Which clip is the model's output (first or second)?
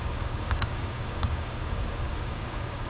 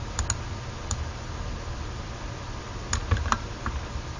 first